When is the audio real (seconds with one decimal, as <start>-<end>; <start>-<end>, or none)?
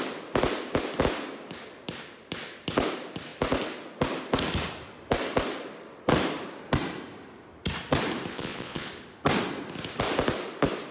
0.0-8.3; 8.9-10.9